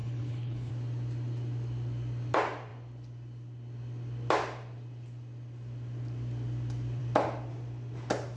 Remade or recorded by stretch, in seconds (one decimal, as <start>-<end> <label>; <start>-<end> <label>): 0.0-0.7 remade; 0.7-8.4 recorded

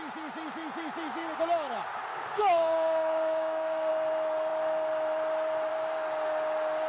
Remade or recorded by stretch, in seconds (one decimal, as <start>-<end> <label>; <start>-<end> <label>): 0.0-2.1 recorded; 2.1-3.9 remade; 3.9-6.9 recorded

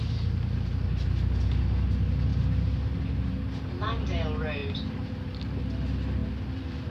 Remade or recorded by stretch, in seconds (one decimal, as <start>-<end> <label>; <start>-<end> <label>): 0.0-6.9 recorded

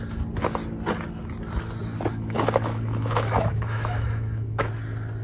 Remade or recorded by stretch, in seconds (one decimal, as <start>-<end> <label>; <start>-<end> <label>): 0.0-2.1 recorded; 2.1-4.7 remade; 4.7-5.2 recorded

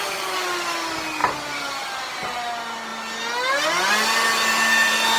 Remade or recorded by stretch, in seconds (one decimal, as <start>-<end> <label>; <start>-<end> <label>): 0.0-1.2 recorded; 1.2-1.7 remade; 1.7-5.2 recorded

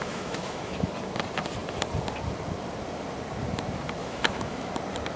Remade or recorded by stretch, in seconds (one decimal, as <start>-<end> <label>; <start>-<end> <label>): 0.0-0.9 remade; 0.9-4.0 recorded; 4.0-4.7 remade; 4.7-5.2 recorded